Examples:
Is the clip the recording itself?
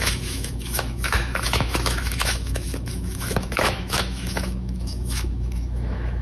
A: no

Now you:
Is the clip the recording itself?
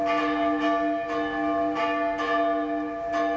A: yes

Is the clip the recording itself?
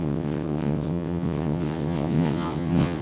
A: no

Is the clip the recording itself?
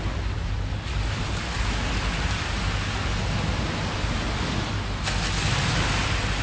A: yes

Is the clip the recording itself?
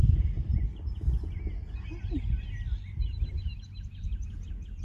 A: yes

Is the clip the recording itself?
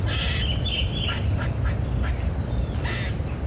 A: yes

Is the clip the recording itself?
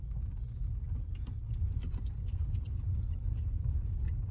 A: yes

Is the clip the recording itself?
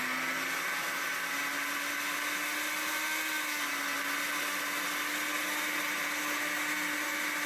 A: yes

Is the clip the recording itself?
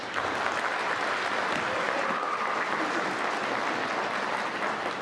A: yes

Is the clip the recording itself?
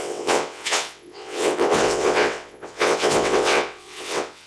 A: no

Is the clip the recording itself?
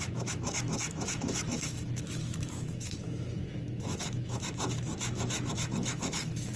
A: no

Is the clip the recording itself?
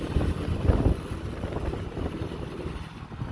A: yes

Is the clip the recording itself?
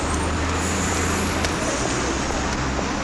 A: yes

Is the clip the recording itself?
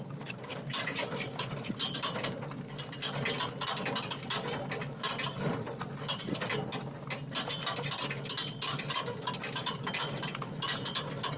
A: yes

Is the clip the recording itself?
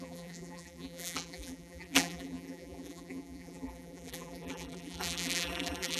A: no